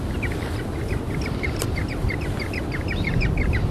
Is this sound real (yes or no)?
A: yes